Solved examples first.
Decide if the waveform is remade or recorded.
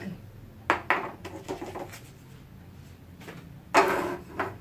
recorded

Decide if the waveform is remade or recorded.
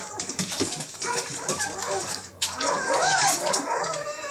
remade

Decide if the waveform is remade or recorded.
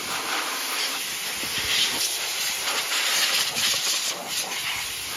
recorded